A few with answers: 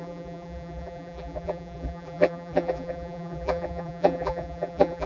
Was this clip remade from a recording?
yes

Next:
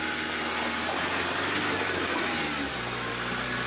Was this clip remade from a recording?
no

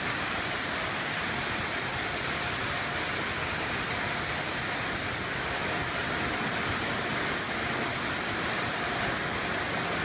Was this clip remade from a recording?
no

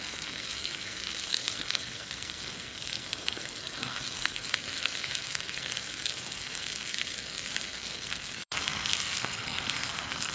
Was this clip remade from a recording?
yes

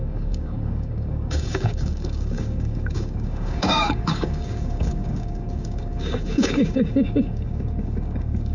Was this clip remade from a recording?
yes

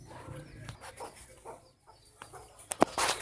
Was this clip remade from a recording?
no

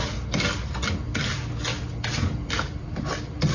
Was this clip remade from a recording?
no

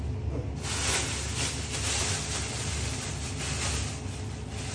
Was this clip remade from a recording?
no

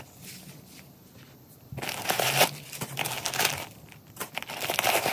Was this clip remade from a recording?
no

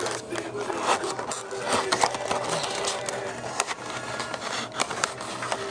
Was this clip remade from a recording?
no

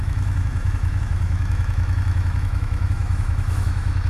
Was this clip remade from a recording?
yes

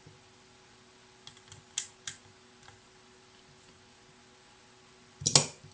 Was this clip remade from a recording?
no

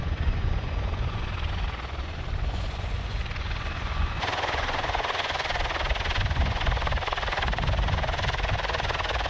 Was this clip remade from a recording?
yes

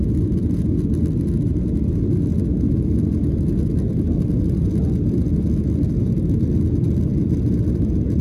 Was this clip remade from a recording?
no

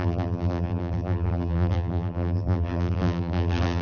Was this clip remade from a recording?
yes